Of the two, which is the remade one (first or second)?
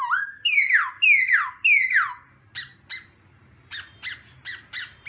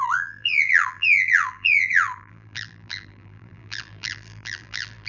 second